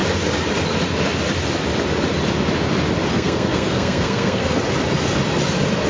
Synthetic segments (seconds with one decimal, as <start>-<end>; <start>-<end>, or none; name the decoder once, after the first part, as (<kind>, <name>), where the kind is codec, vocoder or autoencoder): 3.1-4.6 (codec, SNAC)